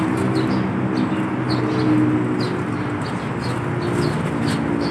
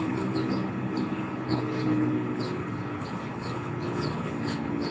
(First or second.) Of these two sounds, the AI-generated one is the second